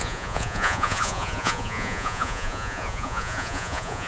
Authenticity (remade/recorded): remade